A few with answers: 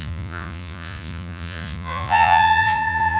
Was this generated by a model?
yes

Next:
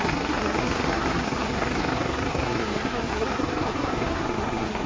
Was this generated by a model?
yes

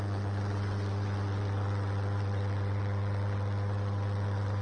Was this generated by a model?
yes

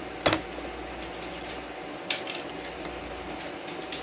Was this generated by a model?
no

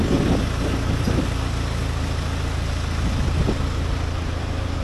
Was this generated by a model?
no